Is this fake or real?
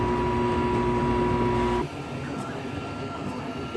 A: real